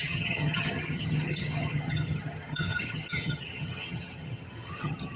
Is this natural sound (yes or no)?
no